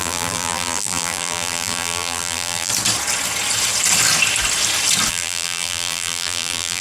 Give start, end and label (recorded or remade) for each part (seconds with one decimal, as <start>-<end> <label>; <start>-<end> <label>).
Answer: 0.0-2.7 remade; 2.7-5.1 recorded; 5.1-6.8 remade